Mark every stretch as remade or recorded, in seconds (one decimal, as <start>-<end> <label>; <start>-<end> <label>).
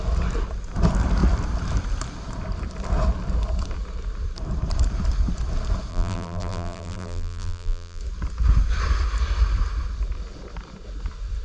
0.0-5.9 recorded; 5.9-8.0 remade; 8.0-11.4 recorded